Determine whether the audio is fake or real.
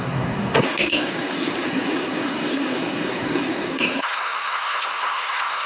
fake